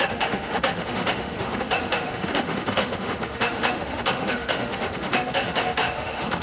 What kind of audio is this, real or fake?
fake